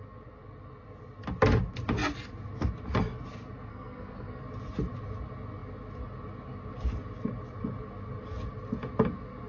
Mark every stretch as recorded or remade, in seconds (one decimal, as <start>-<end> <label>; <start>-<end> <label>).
0.0-3.7 recorded; 3.7-4.4 remade; 4.4-9.5 recorded